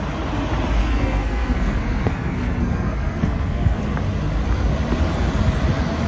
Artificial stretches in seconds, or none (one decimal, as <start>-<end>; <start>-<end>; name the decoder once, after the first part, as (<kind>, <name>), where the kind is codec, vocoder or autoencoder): 0.8-3.8 (codec, SNAC)